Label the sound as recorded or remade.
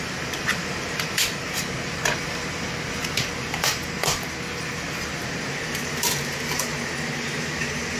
recorded